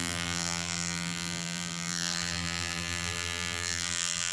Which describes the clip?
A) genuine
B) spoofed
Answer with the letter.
B